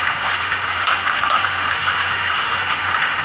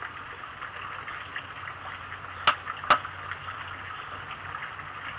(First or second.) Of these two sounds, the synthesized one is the first